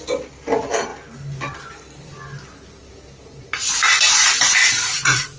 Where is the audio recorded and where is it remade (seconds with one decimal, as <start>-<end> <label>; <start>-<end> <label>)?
0.0-4.6 recorded; 4.6-5.4 remade